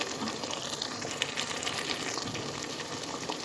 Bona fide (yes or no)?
yes